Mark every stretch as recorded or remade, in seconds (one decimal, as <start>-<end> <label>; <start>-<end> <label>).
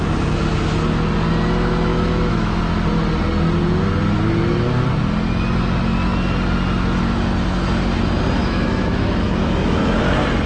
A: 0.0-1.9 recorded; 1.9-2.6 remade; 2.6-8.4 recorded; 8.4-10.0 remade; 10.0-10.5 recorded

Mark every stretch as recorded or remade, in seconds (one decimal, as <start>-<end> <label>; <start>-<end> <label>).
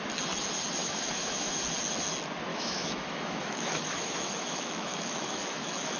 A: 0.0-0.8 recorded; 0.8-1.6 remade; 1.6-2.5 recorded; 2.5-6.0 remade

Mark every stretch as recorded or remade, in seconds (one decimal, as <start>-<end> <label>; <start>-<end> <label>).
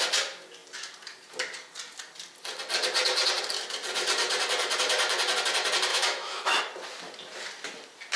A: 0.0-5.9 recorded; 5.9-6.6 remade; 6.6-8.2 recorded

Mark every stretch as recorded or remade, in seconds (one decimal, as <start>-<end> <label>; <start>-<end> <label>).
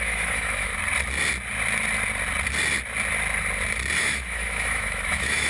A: 0.0-0.7 remade; 0.7-4.0 recorded; 4.0-5.5 remade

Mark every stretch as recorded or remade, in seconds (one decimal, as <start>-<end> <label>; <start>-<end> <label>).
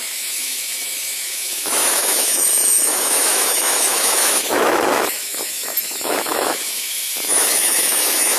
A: 0.0-8.4 remade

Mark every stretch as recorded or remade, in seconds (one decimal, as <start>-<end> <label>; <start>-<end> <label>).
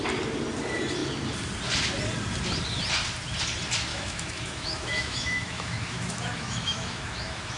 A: 0.0-3.9 recorded; 3.9-7.6 remade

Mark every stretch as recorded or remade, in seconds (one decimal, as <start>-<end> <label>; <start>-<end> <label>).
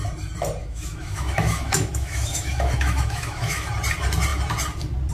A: 0.0-0.6 recorded; 0.6-3.7 remade; 3.7-5.1 recorded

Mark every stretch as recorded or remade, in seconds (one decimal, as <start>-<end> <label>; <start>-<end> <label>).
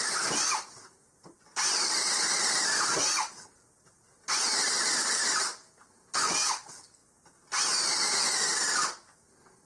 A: 0.0-9.7 recorded